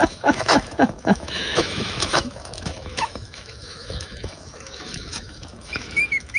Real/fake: fake